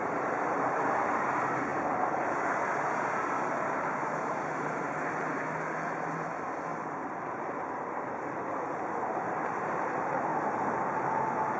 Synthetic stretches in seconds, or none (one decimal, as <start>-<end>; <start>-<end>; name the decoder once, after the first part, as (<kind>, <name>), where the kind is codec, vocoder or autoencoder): 0.0-10.3 (vocoder, BigVGAN v2); 10.8-11.6